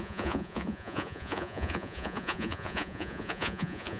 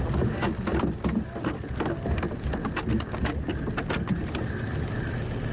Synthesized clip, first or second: first